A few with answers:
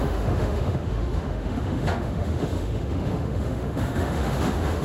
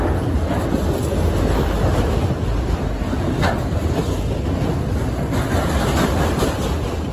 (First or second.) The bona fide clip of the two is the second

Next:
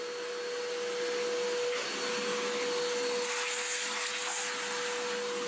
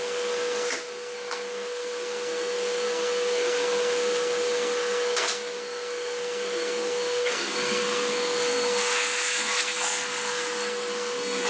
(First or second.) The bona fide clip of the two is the first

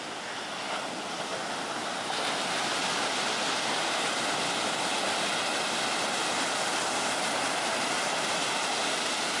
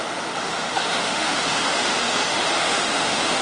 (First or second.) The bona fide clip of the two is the first